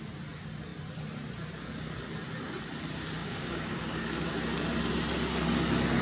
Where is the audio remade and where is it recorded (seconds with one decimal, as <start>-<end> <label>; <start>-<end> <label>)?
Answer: 0.0-3.2 recorded; 3.2-4.3 remade; 4.3-6.0 recorded